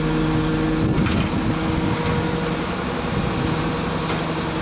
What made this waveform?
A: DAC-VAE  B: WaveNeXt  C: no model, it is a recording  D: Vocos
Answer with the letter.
C